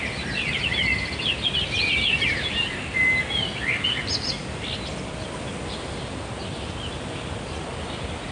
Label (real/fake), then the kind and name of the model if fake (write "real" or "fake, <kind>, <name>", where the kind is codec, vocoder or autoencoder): real